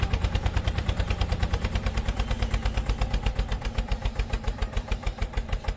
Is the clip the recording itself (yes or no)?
no